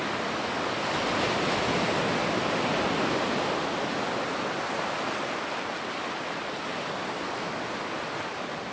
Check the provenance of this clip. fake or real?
real